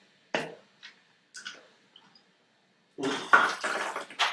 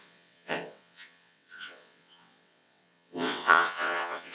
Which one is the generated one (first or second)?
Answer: second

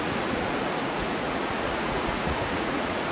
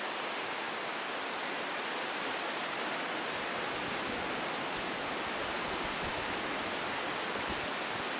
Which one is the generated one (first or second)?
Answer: first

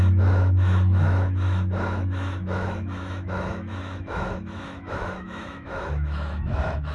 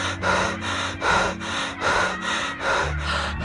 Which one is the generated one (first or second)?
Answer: first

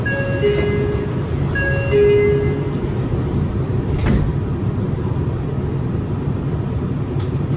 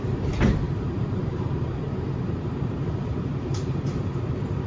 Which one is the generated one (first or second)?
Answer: second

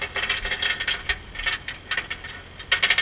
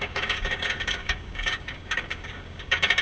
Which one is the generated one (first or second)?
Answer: second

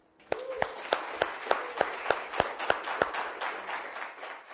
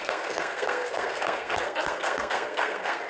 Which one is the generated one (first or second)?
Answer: second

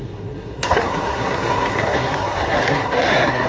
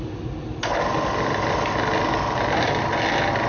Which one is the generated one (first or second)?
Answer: first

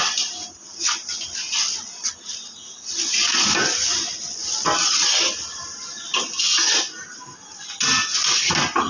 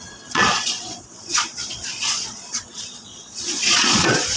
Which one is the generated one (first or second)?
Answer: second